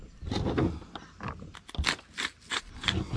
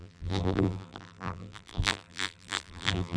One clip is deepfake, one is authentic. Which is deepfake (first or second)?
second